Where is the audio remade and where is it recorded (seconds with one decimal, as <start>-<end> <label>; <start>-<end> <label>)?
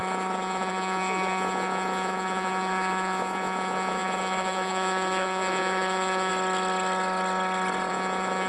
0.0-6.3 remade; 6.3-7.9 recorded; 7.9-8.5 remade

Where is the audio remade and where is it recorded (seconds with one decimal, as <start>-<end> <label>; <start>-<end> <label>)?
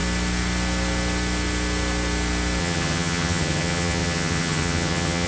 0.0-2.6 recorded; 2.6-5.3 remade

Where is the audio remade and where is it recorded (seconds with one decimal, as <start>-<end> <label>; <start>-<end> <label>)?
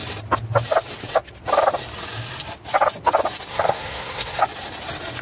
0.0-3.5 recorded; 3.5-4.4 remade; 4.4-5.2 recorded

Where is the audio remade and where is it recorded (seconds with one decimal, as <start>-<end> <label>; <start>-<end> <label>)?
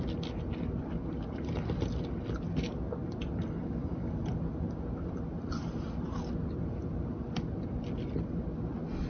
0.0-9.1 recorded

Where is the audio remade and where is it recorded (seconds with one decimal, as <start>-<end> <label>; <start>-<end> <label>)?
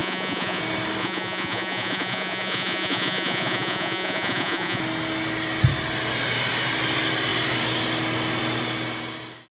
0.0-0.6 remade; 0.6-1.0 recorded; 1.0-4.8 remade; 4.8-9.5 recorded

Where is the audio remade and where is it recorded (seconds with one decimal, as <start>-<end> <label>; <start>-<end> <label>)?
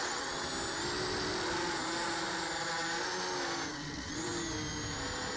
0.0-0.5 remade; 0.5-3.7 recorded; 3.7-4.3 remade; 4.3-5.4 recorded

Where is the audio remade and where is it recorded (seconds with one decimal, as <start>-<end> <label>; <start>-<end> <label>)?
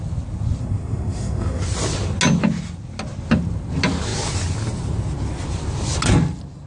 0.0-0.6 recorded; 0.6-1.6 remade; 1.6-6.7 recorded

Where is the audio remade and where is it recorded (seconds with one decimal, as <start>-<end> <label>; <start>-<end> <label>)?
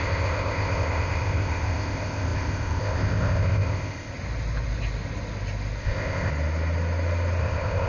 0.0-4.1 remade; 4.1-5.8 recorded; 5.8-6.3 remade; 6.3-7.4 recorded; 7.4-7.9 remade